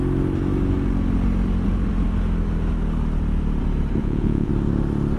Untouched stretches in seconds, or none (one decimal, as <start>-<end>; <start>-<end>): 0.0-4.0; 4.5-5.2